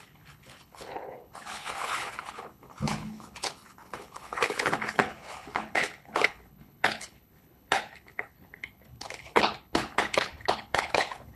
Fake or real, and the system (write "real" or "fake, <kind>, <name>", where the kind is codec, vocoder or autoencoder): fake, codec, HILCodec